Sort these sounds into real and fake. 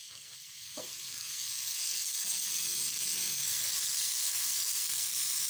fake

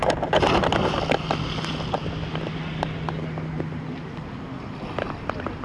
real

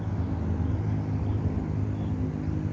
real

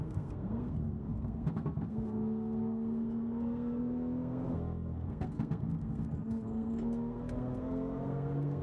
fake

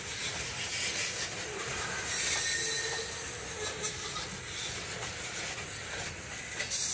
real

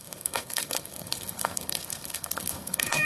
fake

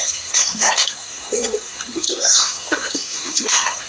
fake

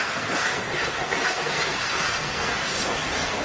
fake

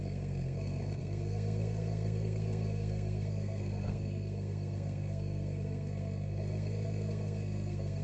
fake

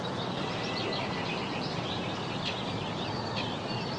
real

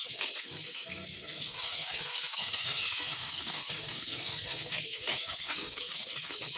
fake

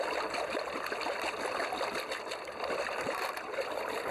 real